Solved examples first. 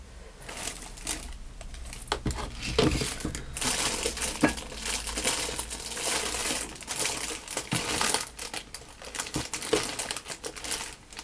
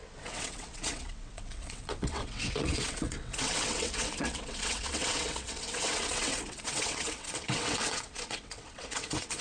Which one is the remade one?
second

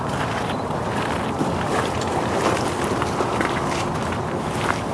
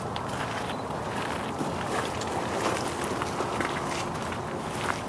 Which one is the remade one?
first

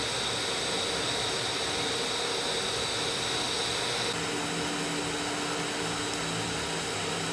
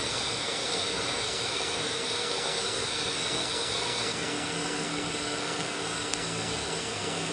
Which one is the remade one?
second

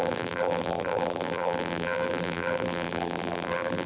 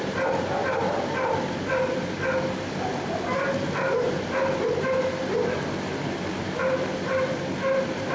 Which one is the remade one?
first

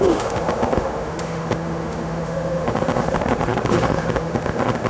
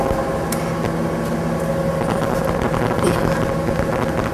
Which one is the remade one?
first